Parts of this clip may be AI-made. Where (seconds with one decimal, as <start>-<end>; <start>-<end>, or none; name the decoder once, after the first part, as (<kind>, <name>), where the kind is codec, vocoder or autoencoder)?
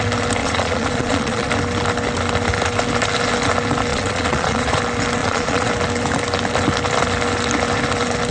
0.4-1.5 (vocoder, Vocos); 3.9-4.8; 5.2-5.7